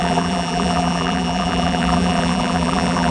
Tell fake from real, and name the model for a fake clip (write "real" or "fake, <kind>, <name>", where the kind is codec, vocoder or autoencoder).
fake, vocoder, BigVGAN v2